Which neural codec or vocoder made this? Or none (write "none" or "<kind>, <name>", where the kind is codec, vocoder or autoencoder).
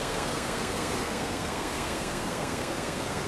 codec, SNAC